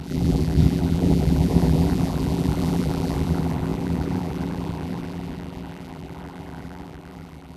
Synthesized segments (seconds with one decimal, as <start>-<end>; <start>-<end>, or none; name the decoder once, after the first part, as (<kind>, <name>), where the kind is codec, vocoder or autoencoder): 0.0-7.6 (vocoder, BigVGAN v2)